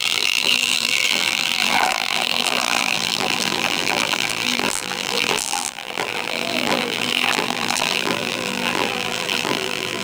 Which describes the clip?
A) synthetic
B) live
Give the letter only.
A